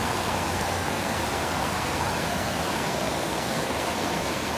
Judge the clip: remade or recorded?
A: remade